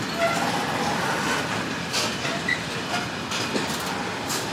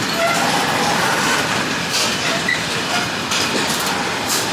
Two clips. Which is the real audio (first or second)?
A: first